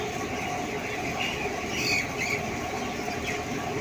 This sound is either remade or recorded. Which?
recorded